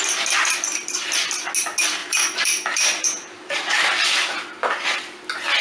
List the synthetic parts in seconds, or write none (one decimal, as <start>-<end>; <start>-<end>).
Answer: 2.0-5.0